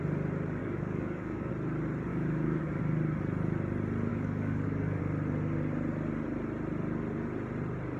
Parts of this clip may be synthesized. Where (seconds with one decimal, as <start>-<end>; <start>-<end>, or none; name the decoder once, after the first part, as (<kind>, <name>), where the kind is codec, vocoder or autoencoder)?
0.6-1.5 (codec, DAC); 2.1-2.8; 4.1-5.0